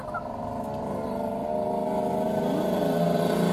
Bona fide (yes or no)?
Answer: yes